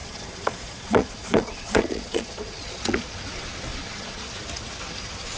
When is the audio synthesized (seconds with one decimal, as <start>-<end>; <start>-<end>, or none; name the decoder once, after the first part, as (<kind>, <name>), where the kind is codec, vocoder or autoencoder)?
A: 0.0-3.2 (vocoder, Vocos); 3.7-4.3